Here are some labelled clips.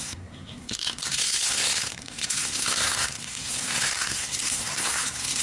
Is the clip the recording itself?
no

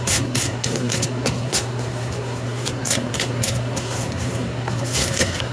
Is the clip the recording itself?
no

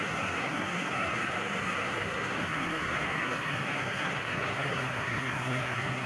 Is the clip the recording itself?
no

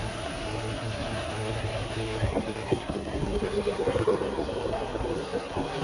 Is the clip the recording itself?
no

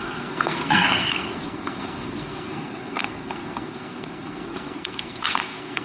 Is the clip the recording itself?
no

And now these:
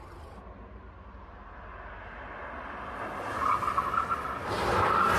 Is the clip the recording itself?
yes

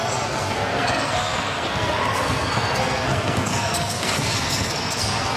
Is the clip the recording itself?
no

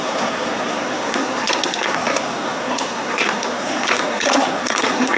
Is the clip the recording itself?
no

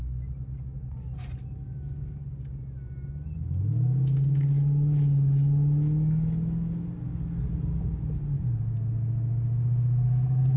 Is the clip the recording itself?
yes